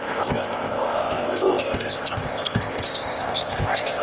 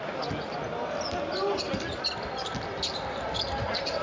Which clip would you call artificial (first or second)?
first